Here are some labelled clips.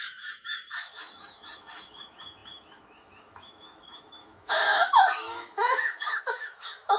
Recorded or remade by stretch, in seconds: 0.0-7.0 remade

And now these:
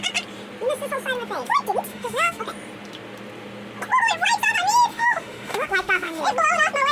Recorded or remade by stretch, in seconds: 0.0-1.9 recorded; 1.9-2.4 remade; 2.4-4.9 recorded; 4.9-6.2 remade; 6.2-6.9 recorded

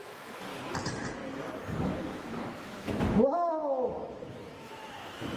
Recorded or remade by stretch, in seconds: 0.0-0.5 remade; 0.5-2.0 recorded; 2.0-5.4 remade